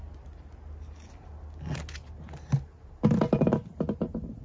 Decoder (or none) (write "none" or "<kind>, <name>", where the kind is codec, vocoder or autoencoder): none